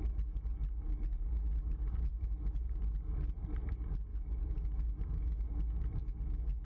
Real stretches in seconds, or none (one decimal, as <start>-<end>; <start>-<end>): 0.0-6.6